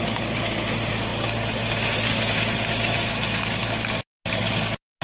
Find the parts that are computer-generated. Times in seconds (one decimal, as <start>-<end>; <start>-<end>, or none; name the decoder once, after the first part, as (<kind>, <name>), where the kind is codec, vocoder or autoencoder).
none